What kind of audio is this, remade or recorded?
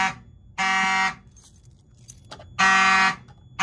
recorded